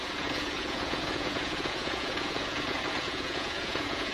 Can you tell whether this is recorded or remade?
remade